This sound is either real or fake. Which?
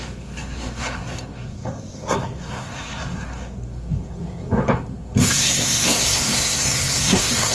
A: fake